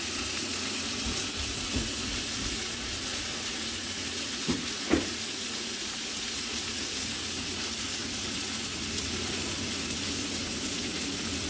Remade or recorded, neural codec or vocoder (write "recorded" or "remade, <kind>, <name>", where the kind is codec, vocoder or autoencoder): remade, vocoder, Vocos